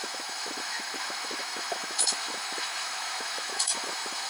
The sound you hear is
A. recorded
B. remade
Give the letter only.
B